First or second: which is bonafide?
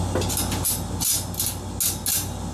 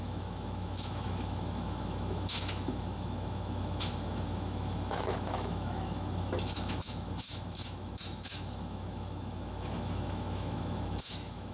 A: first